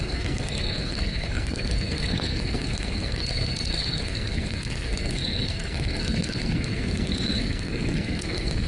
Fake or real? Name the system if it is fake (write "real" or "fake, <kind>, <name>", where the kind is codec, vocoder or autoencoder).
fake, codec, SNAC